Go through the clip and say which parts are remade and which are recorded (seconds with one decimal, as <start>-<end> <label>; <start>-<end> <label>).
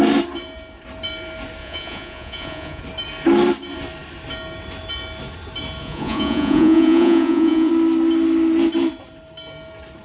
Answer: 0.0-1.6 recorded; 1.6-2.8 remade; 2.8-5.8 recorded; 5.8-7.7 remade; 7.7-10.0 recorded